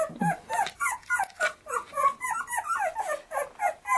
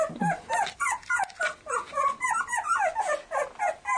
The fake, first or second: second